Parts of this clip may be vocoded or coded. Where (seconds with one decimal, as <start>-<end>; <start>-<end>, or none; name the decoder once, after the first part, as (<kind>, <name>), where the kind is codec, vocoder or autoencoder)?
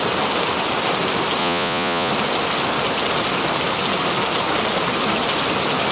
1.4-2.1 (vocoder, Vocos)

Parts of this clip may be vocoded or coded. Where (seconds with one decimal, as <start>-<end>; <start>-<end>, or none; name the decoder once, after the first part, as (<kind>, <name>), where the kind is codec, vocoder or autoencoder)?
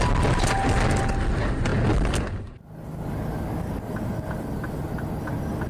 none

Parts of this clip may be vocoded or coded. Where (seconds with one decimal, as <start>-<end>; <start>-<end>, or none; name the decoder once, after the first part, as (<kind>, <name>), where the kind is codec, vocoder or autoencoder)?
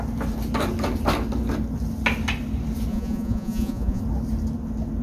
2.9-4.0 (vocoder, Vocos)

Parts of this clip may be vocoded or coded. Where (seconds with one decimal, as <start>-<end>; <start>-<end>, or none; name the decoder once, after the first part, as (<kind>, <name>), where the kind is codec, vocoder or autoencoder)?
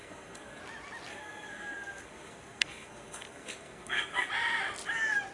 0.0-0.6 (codec, SNAC); 1.1-4.3